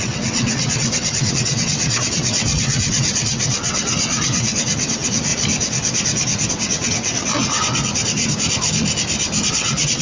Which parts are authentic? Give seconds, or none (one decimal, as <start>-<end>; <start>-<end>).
5.3-6.5; 7.3-9.5